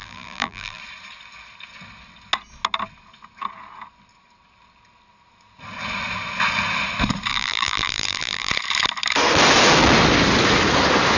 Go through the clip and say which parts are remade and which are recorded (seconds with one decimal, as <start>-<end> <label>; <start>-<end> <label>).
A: 0.0-0.8 remade; 0.8-7.3 recorded; 7.3-8.5 remade; 8.5-11.2 recorded

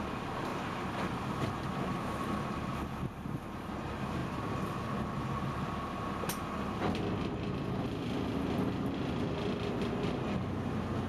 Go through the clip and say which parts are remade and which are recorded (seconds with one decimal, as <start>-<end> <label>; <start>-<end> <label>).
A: 0.0-11.1 recorded

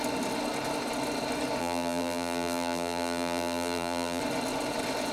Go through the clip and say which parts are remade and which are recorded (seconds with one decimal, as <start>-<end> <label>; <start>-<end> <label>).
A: 0.0-1.6 recorded; 1.6-4.2 remade; 4.2-5.1 recorded

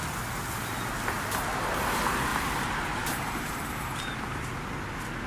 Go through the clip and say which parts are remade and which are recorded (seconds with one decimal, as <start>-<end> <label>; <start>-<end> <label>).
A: 0.0-2.3 recorded; 2.3-4.5 remade; 4.5-5.3 recorded